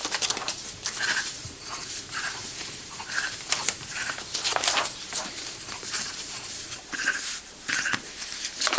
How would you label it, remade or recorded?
remade